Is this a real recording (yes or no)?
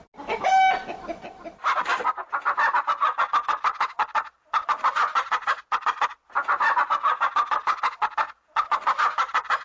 yes